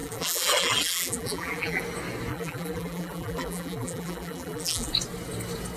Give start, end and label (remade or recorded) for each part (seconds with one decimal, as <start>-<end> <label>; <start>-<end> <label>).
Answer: 0.0-1.8 remade; 1.8-2.3 recorded; 2.3-4.9 remade; 4.9-5.8 recorded

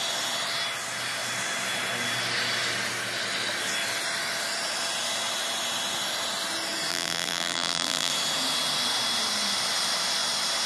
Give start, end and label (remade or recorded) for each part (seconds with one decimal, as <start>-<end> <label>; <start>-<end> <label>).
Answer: 0.0-6.9 recorded; 6.9-8.1 remade; 8.1-10.7 recorded

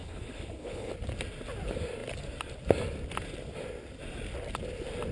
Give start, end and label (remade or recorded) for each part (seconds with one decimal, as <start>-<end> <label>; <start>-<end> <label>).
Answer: 0.0-0.9 remade; 0.9-5.1 recorded

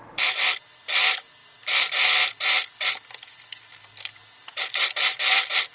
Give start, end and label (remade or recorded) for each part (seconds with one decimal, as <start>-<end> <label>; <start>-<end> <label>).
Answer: 0.0-5.7 recorded

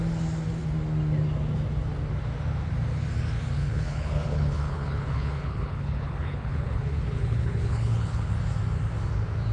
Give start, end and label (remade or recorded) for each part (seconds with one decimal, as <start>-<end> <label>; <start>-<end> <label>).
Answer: 0.0-3.6 recorded; 3.6-8.3 remade; 8.3-9.5 recorded

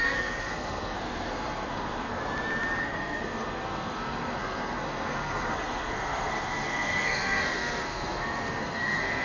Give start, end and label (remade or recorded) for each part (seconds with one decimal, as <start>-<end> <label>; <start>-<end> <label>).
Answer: 0.0-2.2 remade; 2.2-2.8 recorded; 2.8-9.2 remade

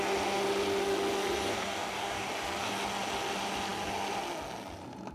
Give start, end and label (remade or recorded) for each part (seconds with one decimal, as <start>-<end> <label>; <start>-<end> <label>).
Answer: 0.0-1.5 recorded; 1.5-2.3 remade; 2.3-5.1 recorded

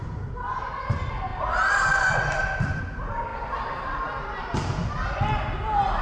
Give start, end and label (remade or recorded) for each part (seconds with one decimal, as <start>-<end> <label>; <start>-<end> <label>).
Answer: 0.0-1.3 recorded; 1.3-2.8 remade; 2.8-3.3 recorded; 3.3-4.2 remade; 4.2-6.0 recorded